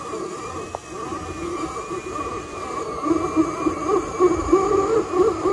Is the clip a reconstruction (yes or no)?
no